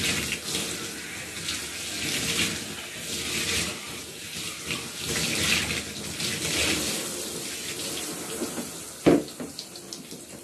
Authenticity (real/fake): real